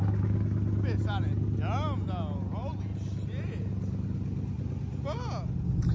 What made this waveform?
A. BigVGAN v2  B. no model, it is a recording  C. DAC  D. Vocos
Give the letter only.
B